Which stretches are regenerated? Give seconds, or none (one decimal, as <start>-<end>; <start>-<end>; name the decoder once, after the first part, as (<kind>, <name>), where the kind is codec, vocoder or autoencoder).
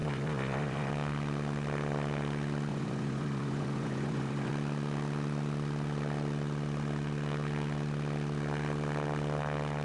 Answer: 0.0-0.9 (vocoder, Vocos); 2.7-4.5